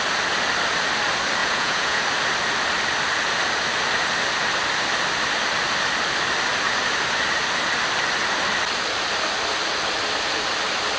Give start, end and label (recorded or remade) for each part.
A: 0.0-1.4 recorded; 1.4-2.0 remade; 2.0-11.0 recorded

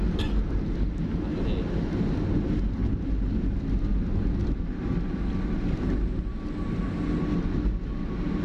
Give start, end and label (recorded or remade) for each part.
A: 0.0-8.4 recorded